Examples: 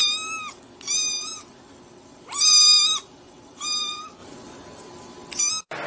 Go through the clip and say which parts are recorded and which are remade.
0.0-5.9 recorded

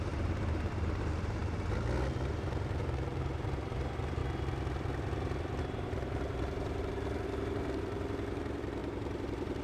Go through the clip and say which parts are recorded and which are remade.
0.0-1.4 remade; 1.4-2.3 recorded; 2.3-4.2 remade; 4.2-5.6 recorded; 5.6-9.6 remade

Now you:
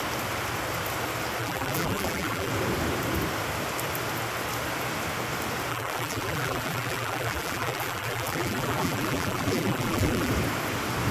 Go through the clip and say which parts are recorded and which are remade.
0.0-1.4 recorded; 1.4-2.5 remade; 2.5-5.7 recorded; 5.7-10.3 remade; 10.3-11.1 recorded

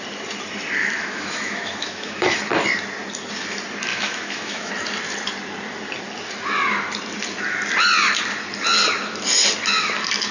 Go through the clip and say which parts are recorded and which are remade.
0.0-0.8 recorded; 0.8-2.4 remade; 2.4-3.9 recorded; 3.9-4.7 remade; 4.7-10.3 recorded

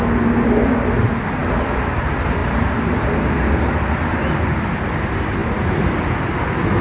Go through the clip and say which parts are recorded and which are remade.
0.0-1.4 recorded; 1.4-2.0 remade; 2.0-5.4 recorded; 5.4-6.0 remade; 6.0-6.8 recorded

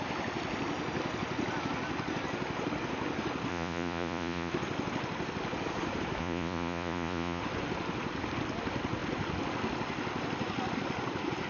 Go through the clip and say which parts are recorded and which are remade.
0.0-3.5 recorded; 3.5-4.5 remade; 4.5-6.2 recorded; 6.2-7.4 remade; 7.4-11.5 recorded